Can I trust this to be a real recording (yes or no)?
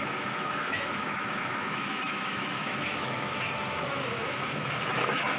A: no